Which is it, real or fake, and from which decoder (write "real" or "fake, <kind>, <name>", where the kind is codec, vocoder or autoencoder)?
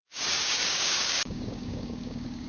fake, codec, DAC